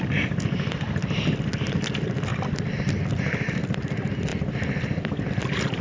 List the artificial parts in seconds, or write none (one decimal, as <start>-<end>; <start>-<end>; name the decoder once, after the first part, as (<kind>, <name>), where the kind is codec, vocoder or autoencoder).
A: none